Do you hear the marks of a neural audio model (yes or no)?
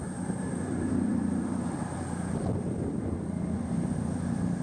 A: yes